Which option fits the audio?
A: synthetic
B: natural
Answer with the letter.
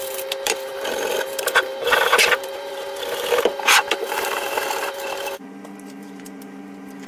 A